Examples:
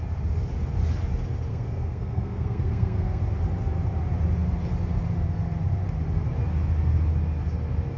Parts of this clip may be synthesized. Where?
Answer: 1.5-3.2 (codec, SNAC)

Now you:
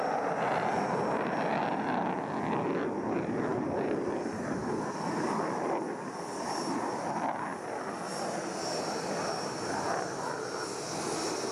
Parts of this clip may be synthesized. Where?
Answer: none